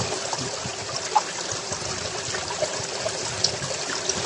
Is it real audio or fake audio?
real